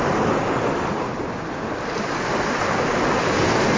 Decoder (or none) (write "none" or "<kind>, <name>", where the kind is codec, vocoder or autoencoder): none